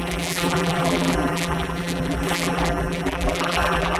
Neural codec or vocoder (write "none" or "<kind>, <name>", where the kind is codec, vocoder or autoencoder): vocoder, BigVGAN v2